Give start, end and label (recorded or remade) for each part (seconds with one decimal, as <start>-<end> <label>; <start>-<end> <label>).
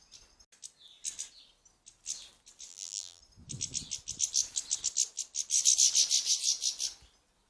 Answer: 0.0-2.7 recorded; 2.7-3.2 remade; 3.2-7.5 recorded